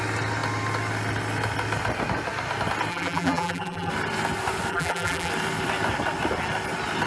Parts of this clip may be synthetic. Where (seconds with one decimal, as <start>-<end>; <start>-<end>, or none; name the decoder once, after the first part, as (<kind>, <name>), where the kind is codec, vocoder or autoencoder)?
2.9-3.9 (vocoder, BigVGAN v2); 4.7-5.3